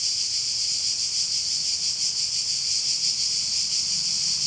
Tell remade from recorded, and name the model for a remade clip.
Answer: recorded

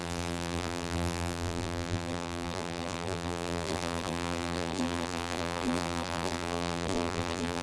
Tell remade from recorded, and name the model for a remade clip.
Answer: remade, vocoder, BigVGAN v2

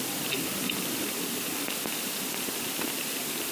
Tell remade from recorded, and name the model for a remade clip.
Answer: recorded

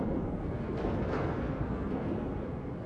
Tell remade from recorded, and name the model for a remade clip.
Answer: remade, codec, SNAC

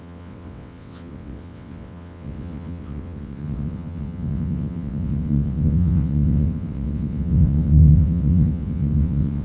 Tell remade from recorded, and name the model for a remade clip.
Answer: remade, vocoder, WaveNeXt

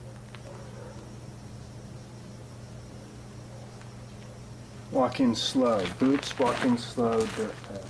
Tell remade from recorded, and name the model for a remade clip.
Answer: recorded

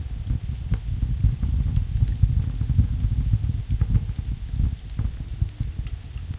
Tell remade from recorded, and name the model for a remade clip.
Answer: recorded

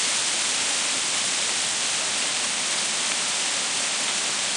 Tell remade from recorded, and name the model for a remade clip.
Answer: recorded